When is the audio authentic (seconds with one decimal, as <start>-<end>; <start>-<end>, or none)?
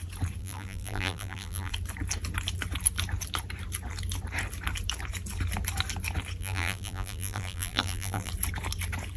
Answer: 0.0-0.4; 1.7-6.4; 8.3-9.2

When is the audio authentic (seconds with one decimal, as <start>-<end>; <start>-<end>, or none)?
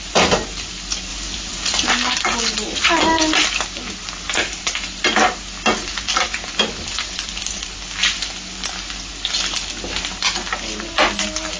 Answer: 0.0-1.1; 1.9-2.7; 3.6-5.8; 7.8-11.6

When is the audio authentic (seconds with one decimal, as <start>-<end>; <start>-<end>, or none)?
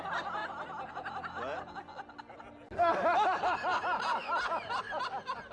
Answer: 0.0-0.4; 0.9-2.9; 5.0-5.5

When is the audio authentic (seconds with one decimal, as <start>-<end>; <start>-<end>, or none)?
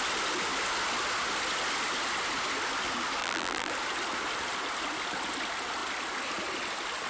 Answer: 0.0-3.2; 3.7-7.1